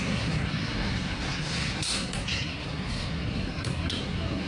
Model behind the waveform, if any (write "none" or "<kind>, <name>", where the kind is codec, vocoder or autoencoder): codec, SNAC